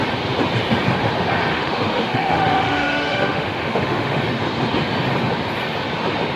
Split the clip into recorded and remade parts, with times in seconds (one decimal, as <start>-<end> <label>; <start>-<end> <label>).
0.0-1.5 recorded; 1.5-4.2 remade; 4.2-6.4 recorded